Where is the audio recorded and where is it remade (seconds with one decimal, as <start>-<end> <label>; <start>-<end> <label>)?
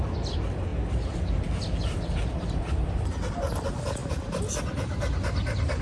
0.0-5.8 recorded